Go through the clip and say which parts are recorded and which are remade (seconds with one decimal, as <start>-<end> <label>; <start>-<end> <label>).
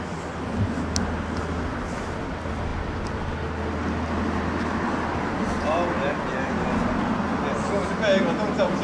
0.0-8.8 recorded